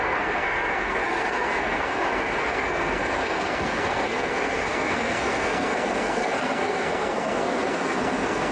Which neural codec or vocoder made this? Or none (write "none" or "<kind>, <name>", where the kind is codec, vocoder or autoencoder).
codec, SNAC